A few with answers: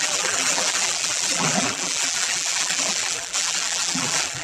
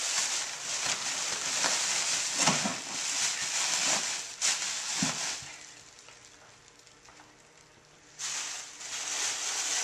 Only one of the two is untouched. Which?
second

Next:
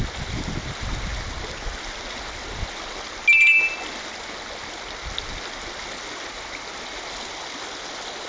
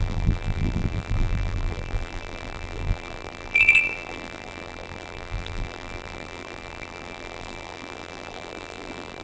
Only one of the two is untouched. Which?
first